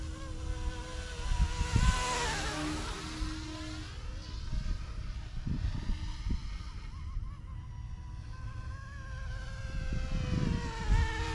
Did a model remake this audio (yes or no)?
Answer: no